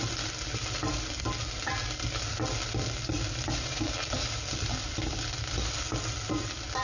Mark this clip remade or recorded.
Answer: recorded